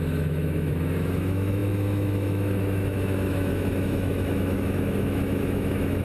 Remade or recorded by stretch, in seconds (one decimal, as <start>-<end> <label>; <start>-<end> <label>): 0.0-6.0 remade